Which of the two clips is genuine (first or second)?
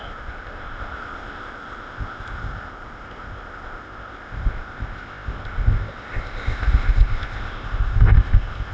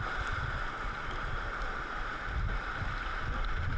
second